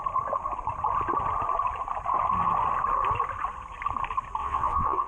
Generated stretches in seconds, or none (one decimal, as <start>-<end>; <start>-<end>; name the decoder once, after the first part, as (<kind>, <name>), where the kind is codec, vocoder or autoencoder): 4.4-5.1 (vocoder, WaveNeXt)